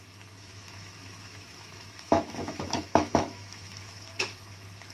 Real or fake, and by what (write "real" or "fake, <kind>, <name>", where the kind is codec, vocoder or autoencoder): fake, autoencoder, DAC-VAE